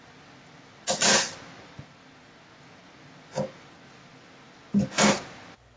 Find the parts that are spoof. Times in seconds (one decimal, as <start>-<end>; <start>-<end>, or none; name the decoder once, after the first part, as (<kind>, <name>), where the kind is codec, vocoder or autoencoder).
none